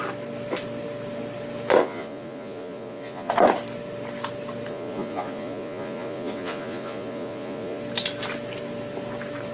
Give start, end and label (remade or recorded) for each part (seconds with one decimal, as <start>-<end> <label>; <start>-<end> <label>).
0.0-1.8 recorded; 1.8-3.3 remade; 3.3-4.7 recorded; 4.7-7.8 remade; 7.8-9.5 recorded